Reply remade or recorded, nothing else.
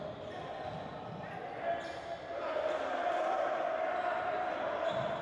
recorded